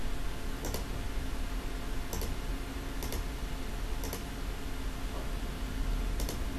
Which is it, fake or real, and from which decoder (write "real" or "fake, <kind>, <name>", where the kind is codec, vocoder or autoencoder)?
real